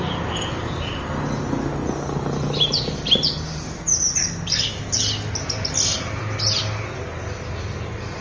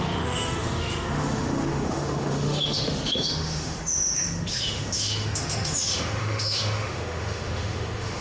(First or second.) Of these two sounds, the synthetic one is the second